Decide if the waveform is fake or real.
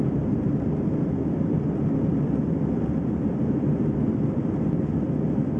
fake